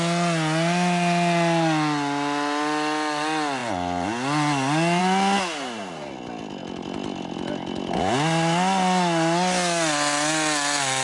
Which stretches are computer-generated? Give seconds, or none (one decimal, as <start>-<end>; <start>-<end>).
none